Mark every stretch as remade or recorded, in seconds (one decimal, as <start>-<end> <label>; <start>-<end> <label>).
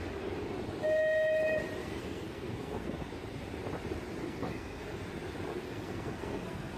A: 0.0-1.8 recorded; 1.8-3.1 remade; 3.1-4.2 recorded; 4.2-5.0 remade; 5.0-5.5 recorded; 5.5-6.8 remade